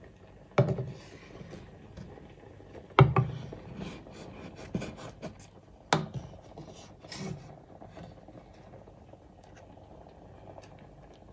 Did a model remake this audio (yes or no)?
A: no